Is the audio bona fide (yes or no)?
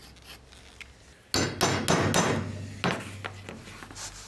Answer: yes